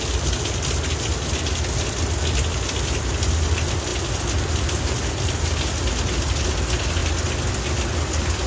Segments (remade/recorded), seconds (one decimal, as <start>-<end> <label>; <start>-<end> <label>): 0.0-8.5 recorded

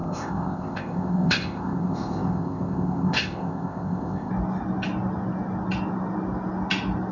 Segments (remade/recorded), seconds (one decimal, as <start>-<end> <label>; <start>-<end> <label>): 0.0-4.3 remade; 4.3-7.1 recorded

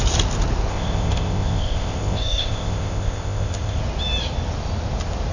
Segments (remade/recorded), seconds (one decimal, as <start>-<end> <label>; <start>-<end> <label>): 0.0-0.7 recorded; 0.7-3.8 remade; 3.8-5.3 recorded

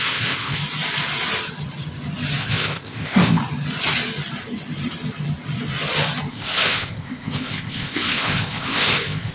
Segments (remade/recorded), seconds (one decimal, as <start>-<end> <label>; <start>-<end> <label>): 0.0-0.6 remade; 0.6-2.4 recorded; 2.4-3.4 remade; 3.4-6.3 recorded; 6.3-9.3 remade